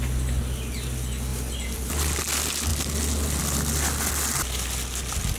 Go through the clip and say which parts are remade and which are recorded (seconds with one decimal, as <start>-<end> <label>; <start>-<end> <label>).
0.0-1.3 recorded; 1.3-1.9 remade; 1.9-5.4 recorded